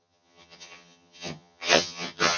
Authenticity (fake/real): fake